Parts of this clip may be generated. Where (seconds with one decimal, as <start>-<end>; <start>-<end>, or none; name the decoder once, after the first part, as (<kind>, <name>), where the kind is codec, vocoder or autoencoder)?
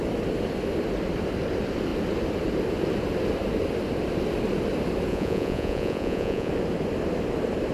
5.1-6.5 (vocoder, Vocos)